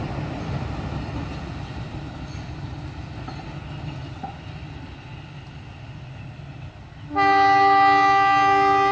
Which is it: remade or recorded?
recorded